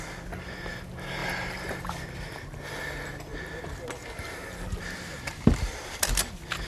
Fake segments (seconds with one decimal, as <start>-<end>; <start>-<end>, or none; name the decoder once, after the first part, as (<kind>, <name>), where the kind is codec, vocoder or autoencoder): none